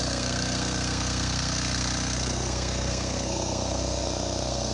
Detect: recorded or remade remade